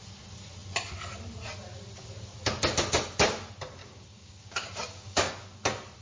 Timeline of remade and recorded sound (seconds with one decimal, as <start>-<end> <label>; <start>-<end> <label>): 0.0-3.8 recorded; 3.8-5.3 remade; 5.3-6.0 recorded